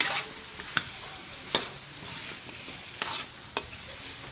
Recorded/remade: recorded